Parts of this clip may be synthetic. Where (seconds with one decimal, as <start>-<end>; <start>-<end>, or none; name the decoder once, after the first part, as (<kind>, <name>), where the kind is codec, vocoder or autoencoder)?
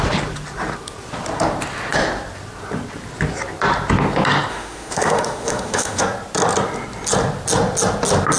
4.5-6.0 (autoencoder, DAC-VAE)